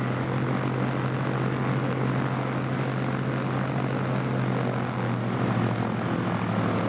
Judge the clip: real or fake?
real